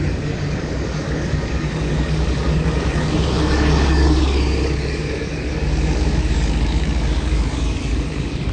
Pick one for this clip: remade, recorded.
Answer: remade